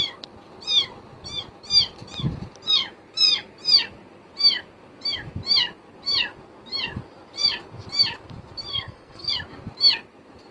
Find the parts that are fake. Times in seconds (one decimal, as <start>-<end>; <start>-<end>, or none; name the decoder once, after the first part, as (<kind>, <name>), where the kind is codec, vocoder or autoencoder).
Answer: 8.7-9.3 (codec, SNAC)